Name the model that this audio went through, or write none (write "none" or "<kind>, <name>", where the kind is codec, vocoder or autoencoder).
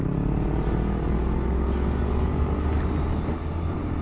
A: none